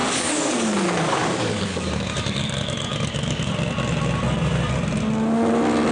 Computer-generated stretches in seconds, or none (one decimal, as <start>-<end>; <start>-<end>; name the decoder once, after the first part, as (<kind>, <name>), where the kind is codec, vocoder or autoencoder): 0.0-3.5 (codec, DAC)